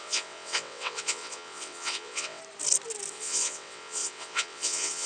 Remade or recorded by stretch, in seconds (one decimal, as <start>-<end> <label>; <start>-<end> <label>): 0.0-2.4 remade; 2.4-3.1 recorded; 3.1-5.1 remade